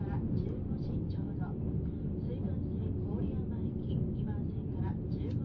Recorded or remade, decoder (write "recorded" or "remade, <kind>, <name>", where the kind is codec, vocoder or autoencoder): recorded